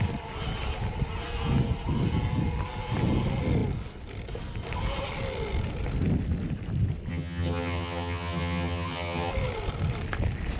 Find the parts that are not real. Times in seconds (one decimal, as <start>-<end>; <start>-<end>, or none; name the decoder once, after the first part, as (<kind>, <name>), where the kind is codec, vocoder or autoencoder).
7.1-9.3 (vocoder, HiFi-GAN)